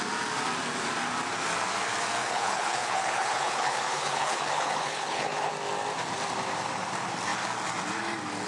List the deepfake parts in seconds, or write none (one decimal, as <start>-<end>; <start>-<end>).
2.2-5.5

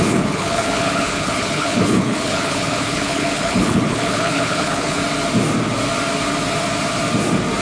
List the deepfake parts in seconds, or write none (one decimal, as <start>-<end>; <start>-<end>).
0.0-5.0